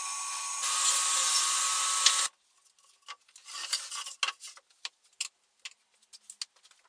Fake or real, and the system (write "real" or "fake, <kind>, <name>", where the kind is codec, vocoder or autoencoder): real